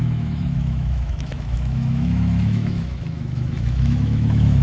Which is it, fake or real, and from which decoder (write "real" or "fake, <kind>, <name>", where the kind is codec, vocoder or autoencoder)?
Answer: fake, autoencoder, DAC-VAE